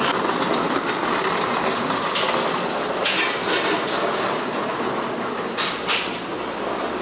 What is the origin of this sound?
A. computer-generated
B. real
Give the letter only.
B